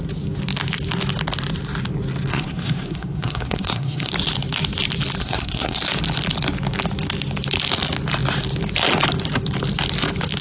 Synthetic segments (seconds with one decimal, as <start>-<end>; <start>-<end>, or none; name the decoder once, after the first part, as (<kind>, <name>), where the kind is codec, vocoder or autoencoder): 2.3-4.1 (codec, SNAC); 5.2-5.8

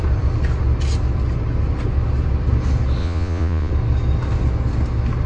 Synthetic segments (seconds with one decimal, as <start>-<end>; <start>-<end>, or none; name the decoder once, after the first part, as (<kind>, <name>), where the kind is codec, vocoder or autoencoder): 3.0-3.7 (vocoder, Vocos)

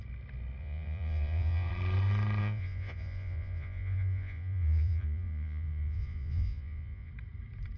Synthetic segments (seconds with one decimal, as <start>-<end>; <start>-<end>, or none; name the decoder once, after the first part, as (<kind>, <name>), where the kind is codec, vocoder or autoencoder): 0.6-1.7 (vocoder, Vocos); 2.4-7.1

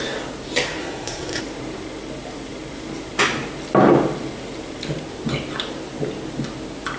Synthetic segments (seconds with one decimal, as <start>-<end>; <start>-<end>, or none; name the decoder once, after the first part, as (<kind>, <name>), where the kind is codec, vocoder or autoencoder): 0.8-1.4 (codec, SNAC)

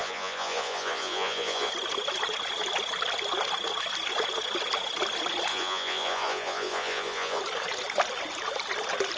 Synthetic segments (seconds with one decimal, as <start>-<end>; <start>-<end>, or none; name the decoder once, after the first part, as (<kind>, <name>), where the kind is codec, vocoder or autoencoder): 0.0-1.7 (vocoder, Vocos); 5.5-7.4